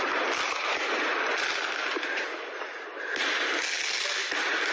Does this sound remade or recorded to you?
recorded